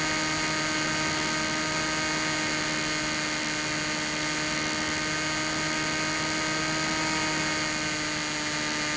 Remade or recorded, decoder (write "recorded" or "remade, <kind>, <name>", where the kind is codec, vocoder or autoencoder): recorded